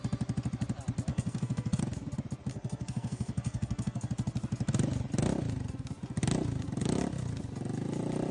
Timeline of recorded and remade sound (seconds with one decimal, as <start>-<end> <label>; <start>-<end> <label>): 0.0-1.1 recorded; 1.1-1.8 remade; 1.8-2.5 recorded; 2.5-4.1 remade; 4.1-8.3 recorded